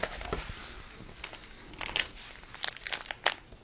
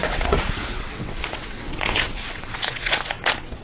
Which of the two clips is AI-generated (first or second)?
second